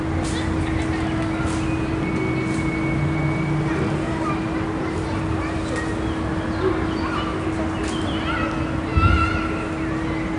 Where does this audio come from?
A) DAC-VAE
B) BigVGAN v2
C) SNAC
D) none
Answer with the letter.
D